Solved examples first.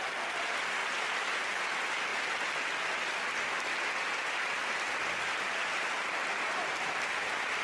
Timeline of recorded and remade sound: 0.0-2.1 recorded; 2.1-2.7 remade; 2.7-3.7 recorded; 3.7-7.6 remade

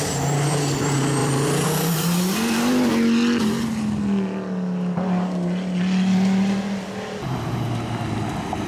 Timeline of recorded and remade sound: 0.0-1.2 recorded; 1.2-2.9 remade; 2.9-8.7 recorded

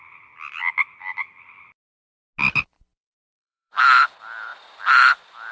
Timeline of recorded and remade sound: 0.0-3.3 recorded; 3.3-3.8 remade; 3.8-4.5 recorded; 4.5-5.1 remade; 5.1-5.5 recorded

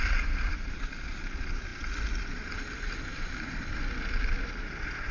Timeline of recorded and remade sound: 0.0-5.1 recorded

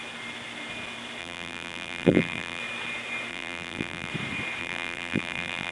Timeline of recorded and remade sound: 0.0-1.2 recorded; 1.2-2.6 remade; 2.6-3.3 recorded; 3.3-4.1 remade; 4.1-4.6 recorded; 4.6-5.7 remade

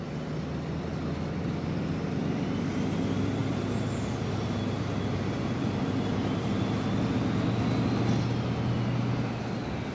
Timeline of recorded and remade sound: 0.0-9.9 recorded

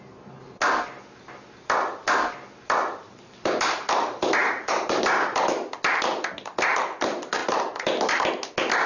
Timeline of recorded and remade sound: 0.0-4.4 recorded; 4.4-5.0 remade; 5.0-8.9 recorded

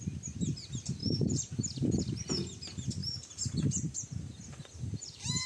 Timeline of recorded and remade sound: 0.0-1.0 recorded; 1.0-2.0 remade; 2.0-3.0 recorded; 3.0-5.5 remade